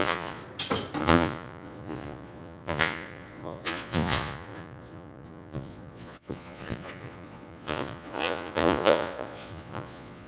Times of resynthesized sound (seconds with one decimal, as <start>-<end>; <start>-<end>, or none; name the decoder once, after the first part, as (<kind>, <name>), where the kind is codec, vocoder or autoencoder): 0.0-0.4 (vocoder, Vocos); 1.0-10.3